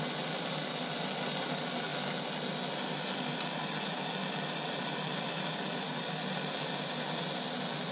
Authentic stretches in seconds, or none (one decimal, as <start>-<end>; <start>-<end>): 0.0-7.9